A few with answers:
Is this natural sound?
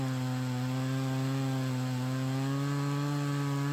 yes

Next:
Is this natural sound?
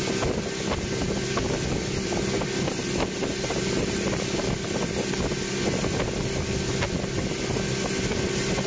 yes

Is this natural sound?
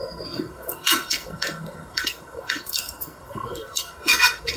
no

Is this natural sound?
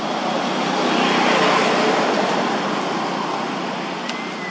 yes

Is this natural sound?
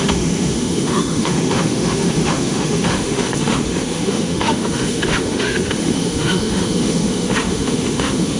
no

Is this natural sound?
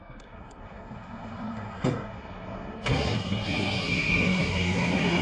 no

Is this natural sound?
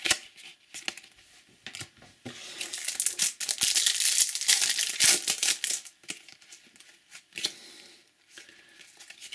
yes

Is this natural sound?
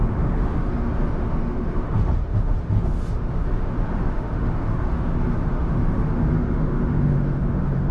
no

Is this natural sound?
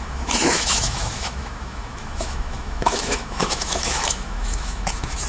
no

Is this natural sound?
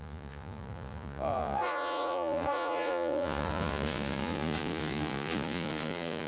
no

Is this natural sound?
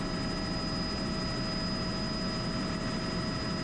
yes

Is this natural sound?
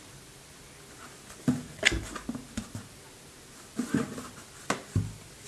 yes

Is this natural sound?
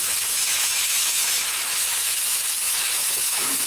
no